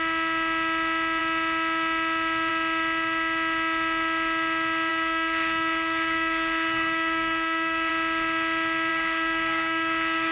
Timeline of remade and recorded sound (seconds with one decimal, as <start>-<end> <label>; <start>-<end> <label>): 0.0-4.9 recorded; 4.9-7.9 remade; 7.9-8.9 recorded; 8.9-10.3 remade